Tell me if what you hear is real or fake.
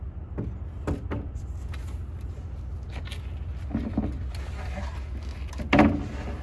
real